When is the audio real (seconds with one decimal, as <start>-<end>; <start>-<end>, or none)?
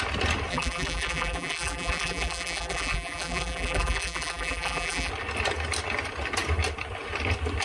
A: 0.0-0.5; 5.1-7.6